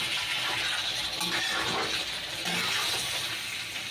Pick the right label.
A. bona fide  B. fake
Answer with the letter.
A